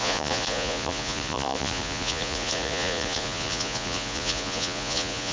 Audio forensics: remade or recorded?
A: remade